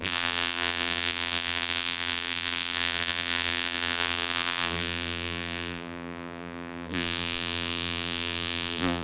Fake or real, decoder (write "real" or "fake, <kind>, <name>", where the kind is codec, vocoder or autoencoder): fake, vocoder, BigVGAN v2